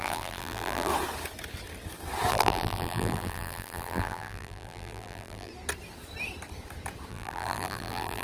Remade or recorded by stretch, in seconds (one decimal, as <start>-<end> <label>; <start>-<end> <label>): 0.0-0.9 remade; 0.9-2.3 recorded; 2.3-5.5 remade; 5.5-7.1 recorded; 7.1-8.2 remade